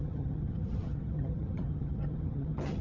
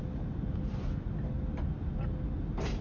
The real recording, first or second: second